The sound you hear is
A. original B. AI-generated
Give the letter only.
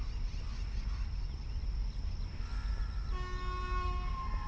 A